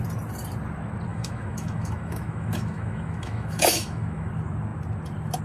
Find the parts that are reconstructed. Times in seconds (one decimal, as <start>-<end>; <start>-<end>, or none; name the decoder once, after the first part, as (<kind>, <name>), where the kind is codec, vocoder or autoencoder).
1.1-4.3 (autoencoder, DAC-VAE)